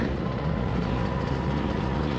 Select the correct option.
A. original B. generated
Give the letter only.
B